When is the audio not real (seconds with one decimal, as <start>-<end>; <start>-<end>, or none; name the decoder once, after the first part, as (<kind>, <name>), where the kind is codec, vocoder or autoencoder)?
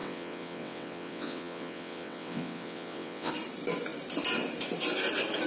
0.0-3.3 (vocoder, WaveNeXt)